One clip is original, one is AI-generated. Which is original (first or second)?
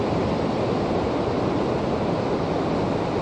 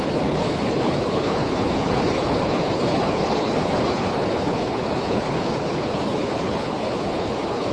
first